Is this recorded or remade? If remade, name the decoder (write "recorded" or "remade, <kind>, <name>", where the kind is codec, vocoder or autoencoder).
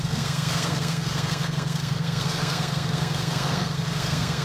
remade, codec, SNAC